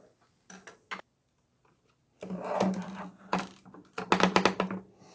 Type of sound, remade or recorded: recorded